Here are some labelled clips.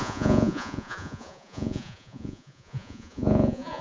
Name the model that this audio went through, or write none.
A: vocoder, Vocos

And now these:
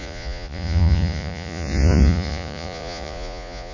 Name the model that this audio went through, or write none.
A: vocoder, Vocos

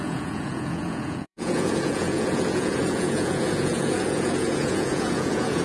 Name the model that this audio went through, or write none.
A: vocoder, Vocos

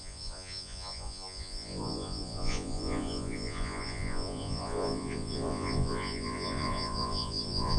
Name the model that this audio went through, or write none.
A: vocoder, Vocos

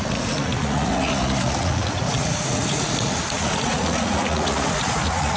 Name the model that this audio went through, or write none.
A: vocoder, Vocos